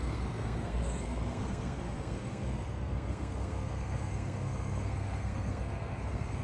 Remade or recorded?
remade